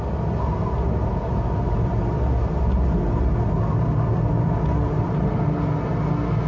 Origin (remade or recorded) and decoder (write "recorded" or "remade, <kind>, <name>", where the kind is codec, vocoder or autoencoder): recorded